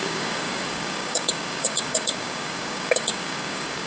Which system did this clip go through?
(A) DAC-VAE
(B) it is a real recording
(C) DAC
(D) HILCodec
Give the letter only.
C